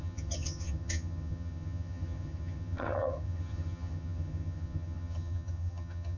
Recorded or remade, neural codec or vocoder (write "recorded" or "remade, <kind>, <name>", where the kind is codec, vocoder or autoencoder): remade, vocoder, HiFi-GAN